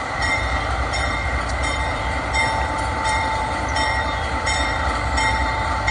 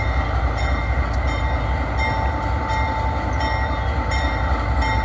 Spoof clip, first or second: first